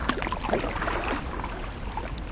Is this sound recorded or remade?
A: recorded